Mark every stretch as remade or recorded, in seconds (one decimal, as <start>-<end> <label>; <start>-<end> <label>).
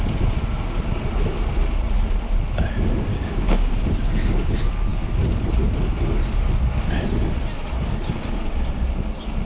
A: 0.0-3.1 recorded; 3.1-3.7 remade; 3.7-9.5 recorded